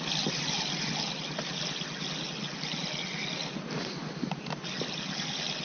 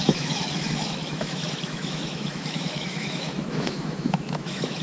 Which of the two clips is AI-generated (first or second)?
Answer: second